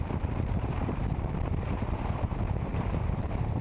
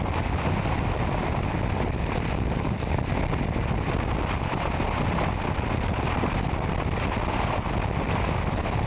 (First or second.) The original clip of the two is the second